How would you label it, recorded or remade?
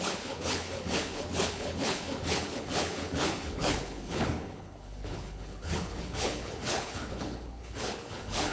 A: remade